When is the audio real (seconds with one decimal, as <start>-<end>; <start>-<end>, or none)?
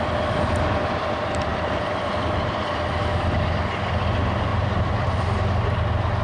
0.0-1.5; 2.7-4.5; 5.1-6.2